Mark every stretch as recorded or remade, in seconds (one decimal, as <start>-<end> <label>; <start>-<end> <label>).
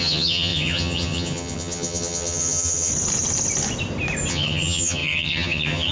0.0-2.9 remade; 2.9-4.3 recorded; 4.3-5.9 remade